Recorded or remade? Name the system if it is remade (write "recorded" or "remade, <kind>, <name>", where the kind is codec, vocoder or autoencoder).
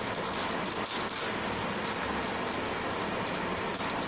recorded